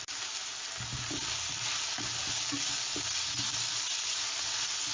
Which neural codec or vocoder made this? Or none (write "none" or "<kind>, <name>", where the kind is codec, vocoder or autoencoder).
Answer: none